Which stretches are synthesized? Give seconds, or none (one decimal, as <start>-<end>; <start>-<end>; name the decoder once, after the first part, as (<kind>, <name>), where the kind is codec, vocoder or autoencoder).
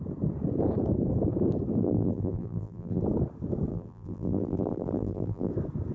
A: 1.8-3.0 (vocoder, BigVGAN v2); 3.7-5.5